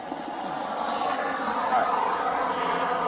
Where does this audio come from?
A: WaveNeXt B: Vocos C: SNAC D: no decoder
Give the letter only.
D